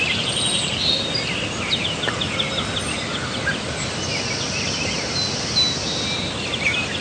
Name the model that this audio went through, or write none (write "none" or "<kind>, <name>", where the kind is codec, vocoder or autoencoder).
none